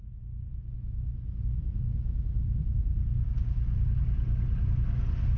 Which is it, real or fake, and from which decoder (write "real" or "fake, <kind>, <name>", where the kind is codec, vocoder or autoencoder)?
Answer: real